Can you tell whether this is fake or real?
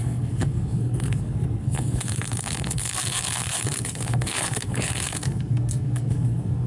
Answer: fake